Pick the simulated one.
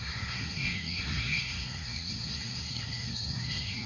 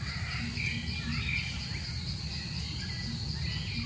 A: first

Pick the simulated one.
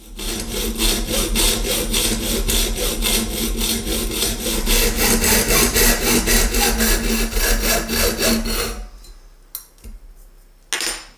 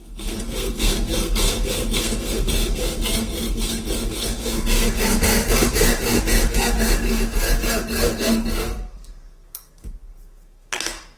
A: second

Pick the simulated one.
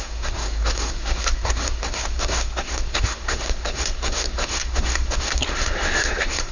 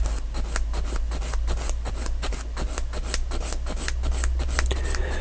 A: first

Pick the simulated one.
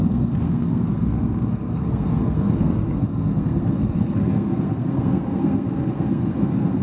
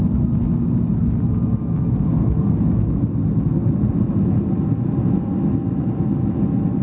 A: first